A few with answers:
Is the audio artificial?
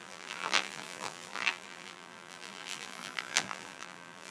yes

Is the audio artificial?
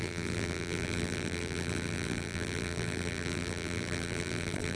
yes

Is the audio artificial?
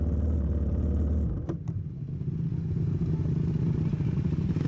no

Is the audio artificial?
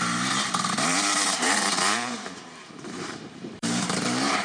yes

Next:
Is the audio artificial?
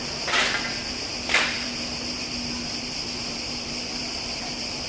yes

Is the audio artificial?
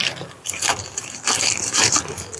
yes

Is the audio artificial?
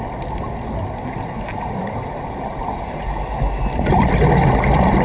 no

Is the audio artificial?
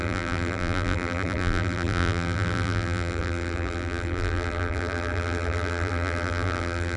yes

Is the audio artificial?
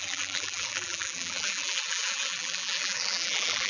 yes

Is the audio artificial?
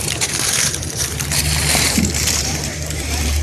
yes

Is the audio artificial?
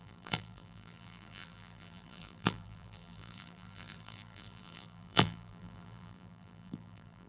yes